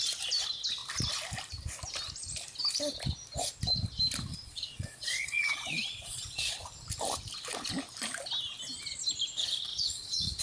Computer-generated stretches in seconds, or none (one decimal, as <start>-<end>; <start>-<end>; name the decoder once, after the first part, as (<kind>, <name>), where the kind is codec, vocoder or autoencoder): 4.3-6.7 (vocoder, Vocos); 9.7-10.4